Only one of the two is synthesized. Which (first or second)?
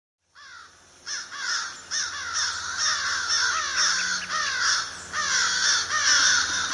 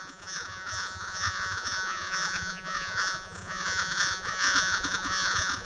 second